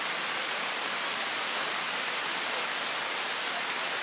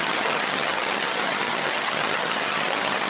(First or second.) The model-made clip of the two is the second